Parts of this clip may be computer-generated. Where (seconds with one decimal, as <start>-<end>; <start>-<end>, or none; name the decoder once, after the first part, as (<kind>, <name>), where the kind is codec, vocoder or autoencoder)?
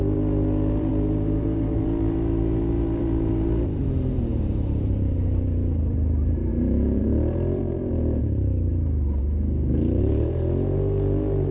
0.0-8.7 (vocoder, BigVGAN v2); 10.0-11.5